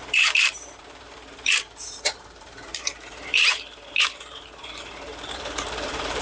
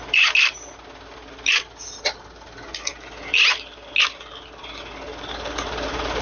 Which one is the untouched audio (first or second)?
second